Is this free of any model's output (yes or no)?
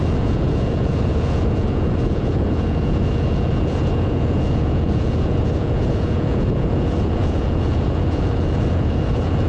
no